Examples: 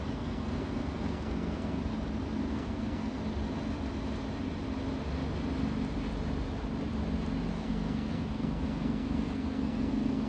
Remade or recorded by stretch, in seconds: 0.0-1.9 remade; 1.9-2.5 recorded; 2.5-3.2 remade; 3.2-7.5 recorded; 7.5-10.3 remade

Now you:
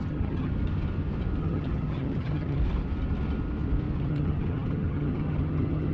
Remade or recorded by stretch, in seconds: 0.0-0.5 remade; 0.5-1.4 recorded; 1.4-2.6 remade; 2.6-4.0 recorded; 4.0-5.9 remade